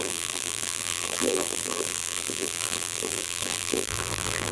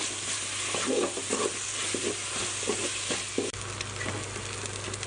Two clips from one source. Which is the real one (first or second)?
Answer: second